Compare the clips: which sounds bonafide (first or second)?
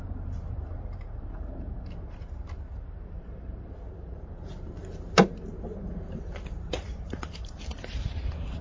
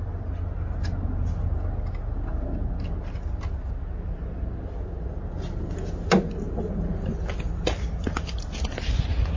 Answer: second